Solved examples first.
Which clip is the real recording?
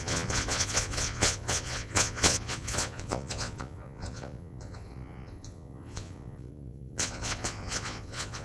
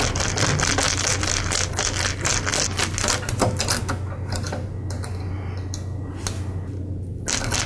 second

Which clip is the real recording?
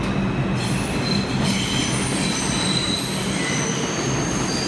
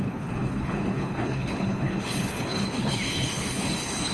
first